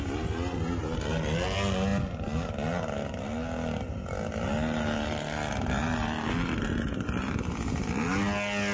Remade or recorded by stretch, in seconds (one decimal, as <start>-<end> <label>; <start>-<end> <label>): 0.0-8.7 recorded